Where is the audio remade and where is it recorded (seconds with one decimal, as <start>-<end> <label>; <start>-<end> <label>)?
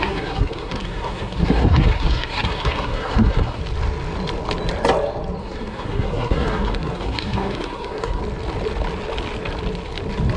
0.0-3.6 remade; 3.6-5.4 recorded; 5.4-8.2 remade; 8.2-10.4 recorded